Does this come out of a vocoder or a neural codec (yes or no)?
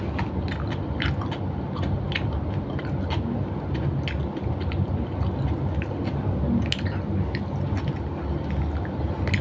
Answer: no